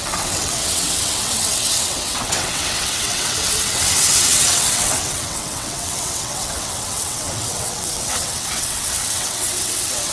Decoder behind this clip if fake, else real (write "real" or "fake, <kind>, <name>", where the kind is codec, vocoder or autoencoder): fake, vocoder, WaveNeXt